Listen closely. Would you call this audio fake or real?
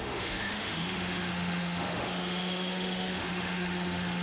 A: fake